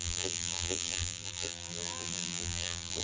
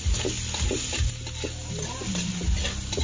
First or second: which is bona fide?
second